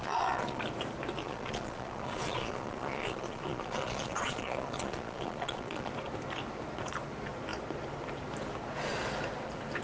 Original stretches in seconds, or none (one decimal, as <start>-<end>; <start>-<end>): 0.6-1.2; 5.9-9.8